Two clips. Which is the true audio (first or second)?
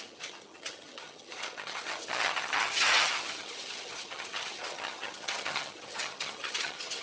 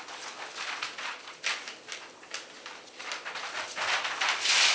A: second